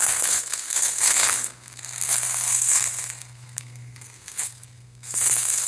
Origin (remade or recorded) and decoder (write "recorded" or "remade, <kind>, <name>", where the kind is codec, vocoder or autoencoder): remade, codec, SNAC